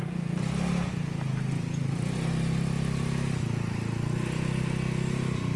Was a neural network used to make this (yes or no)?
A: no